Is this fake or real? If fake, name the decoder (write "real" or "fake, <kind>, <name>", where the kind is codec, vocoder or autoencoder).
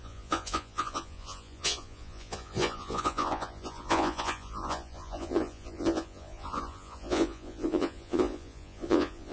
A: fake, vocoder, Vocos